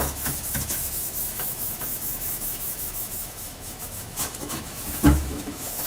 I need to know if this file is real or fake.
fake